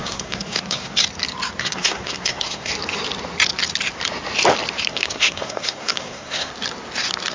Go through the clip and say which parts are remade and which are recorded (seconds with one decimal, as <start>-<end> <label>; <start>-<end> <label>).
0.0-1.0 remade; 1.0-1.6 recorded; 1.6-2.7 remade; 2.7-4.9 recorded; 4.9-6.5 remade; 6.5-7.3 recorded